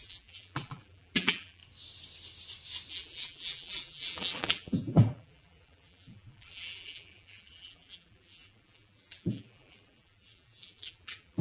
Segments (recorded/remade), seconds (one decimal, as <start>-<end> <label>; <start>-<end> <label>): 0.0-1.6 remade; 1.6-2.9 recorded; 2.9-11.4 remade